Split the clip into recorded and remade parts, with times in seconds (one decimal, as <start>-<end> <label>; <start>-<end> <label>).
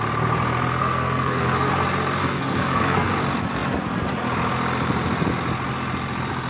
0.0-0.8 recorded; 0.8-1.7 remade; 1.7-2.2 recorded; 2.2-3.1 remade; 3.1-6.5 recorded